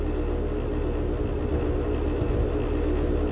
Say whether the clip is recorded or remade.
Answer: recorded